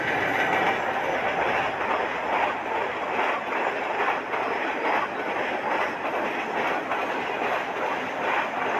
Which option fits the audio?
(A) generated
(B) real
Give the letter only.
B